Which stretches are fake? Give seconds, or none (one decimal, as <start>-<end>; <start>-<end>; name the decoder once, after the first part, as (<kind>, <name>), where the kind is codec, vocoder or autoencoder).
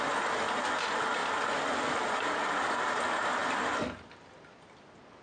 1.2-2.8 (vocoder, BigVGAN v2); 3.4-4.8